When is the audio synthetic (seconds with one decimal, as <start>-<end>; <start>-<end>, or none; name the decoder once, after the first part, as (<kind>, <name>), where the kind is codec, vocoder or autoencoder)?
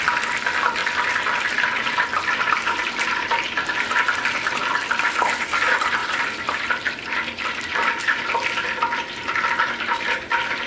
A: 6.0-8.5 (vocoder, BigVGAN v2)